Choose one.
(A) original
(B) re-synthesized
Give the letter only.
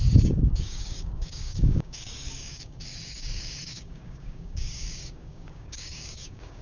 B